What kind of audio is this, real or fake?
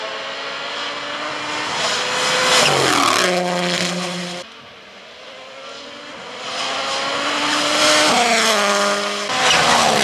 real